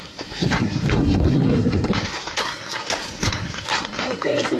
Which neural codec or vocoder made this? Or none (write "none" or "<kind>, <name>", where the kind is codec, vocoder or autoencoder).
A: codec, SNAC